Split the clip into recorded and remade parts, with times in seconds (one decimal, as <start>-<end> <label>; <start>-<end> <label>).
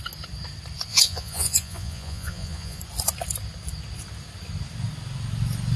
0.0-0.9 recorded; 0.9-2.8 remade; 2.8-5.8 recorded